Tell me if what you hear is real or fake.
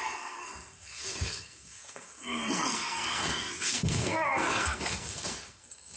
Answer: fake